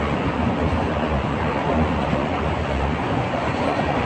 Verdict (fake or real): fake